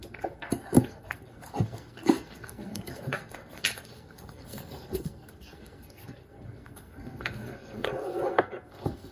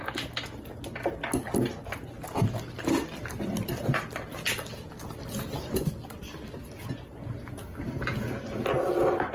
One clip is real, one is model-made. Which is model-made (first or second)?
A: first